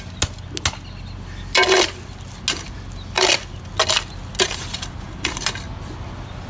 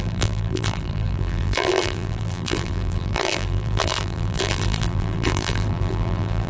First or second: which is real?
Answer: first